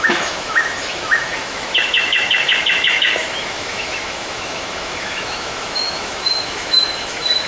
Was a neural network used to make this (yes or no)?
yes